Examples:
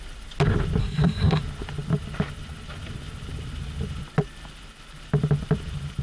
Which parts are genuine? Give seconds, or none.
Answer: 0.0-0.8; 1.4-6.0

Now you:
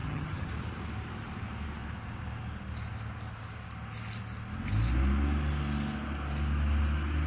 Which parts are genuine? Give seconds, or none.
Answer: 0.5-7.3

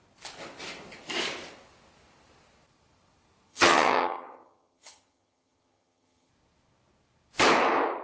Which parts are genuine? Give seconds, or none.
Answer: 0.0-3.5; 6.3-8.0